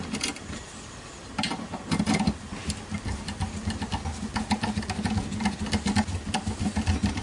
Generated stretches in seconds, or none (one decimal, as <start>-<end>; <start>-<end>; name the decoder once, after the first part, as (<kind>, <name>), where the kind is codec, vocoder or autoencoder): none